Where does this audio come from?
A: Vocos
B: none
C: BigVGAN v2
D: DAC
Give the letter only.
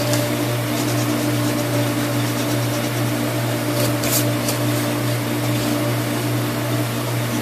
C